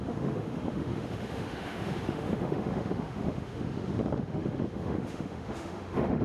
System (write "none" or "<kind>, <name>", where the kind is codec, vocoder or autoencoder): autoencoder, DAC-VAE